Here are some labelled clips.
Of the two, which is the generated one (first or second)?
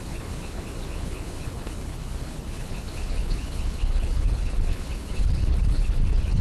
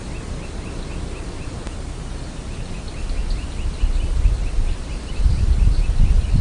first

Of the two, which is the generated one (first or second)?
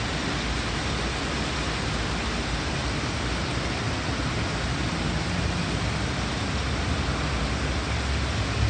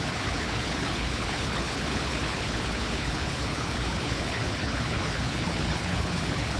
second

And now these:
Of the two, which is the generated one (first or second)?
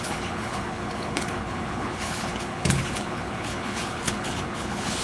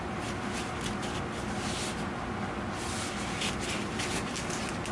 first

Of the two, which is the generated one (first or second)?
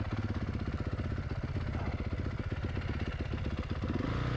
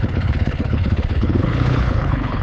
second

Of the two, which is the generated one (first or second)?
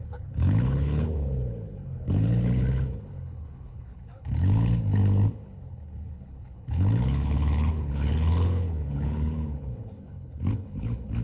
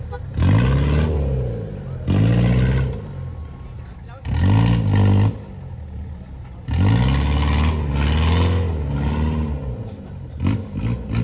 first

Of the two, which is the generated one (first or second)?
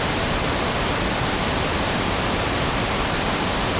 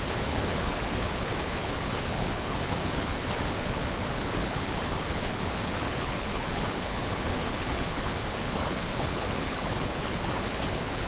second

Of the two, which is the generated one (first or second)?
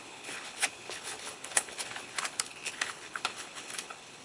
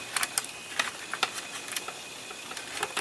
first